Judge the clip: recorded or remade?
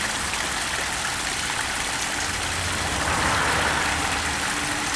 recorded